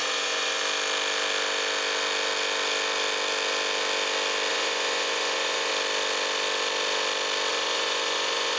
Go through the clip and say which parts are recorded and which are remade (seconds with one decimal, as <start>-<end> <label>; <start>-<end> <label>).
0.0-0.6 remade; 0.6-4.5 recorded; 4.5-5.7 remade; 5.7-7.5 recorded; 7.5-8.6 remade